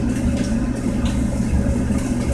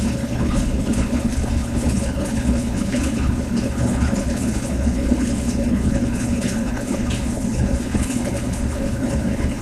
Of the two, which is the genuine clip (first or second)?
first